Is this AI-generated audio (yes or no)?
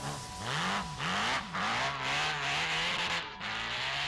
no